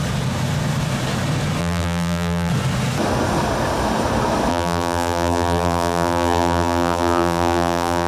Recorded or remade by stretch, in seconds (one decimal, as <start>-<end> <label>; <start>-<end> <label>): 0.0-1.6 recorded; 1.6-2.5 remade; 2.5-4.5 recorded; 4.5-8.1 remade